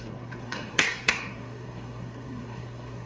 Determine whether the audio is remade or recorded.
remade